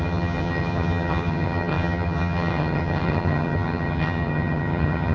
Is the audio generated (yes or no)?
yes